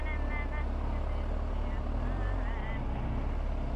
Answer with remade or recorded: recorded